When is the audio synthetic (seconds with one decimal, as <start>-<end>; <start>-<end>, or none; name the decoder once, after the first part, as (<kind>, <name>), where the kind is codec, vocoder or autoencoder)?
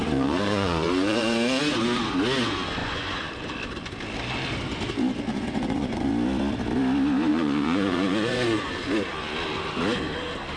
0.0-1.6 (vocoder, Vocos); 2.8-3.3; 5.3-6.1; 7.3-8.7